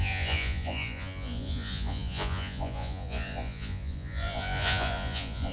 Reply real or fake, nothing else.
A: fake